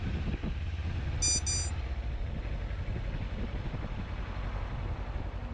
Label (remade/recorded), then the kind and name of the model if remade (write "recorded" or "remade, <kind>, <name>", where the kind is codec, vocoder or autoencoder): recorded